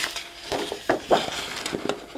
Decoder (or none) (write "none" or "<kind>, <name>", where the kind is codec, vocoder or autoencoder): none